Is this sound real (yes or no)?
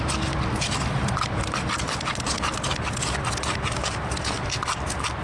yes